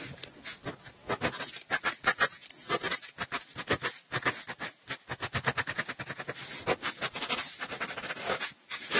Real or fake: real